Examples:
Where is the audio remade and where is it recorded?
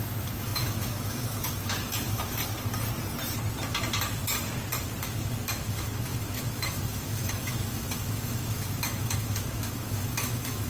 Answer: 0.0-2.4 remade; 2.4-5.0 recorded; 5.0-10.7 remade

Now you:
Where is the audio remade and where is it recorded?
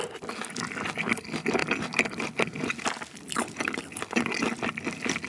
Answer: 0.0-5.3 recorded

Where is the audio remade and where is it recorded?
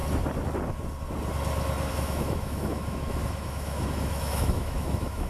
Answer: 0.0-1.9 recorded; 1.9-5.3 remade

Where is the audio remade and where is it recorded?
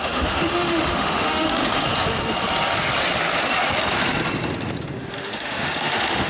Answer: 0.0-1.6 remade; 1.6-5.1 recorded; 5.1-6.3 remade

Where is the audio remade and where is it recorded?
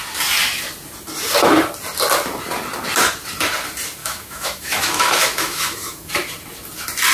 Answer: 0.0-4.0 recorded; 4.0-6.1 remade; 6.1-7.1 recorded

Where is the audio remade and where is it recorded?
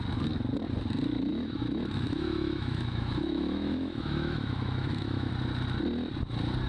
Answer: 0.0-1.3 recorded; 1.3-5.3 remade; 5.3-6.7 recorded